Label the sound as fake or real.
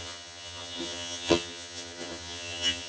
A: fake